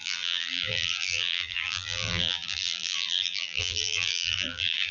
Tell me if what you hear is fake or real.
fake